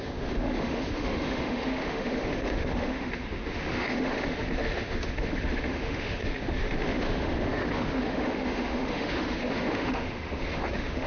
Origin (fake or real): fake